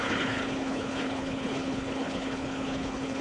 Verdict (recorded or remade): remade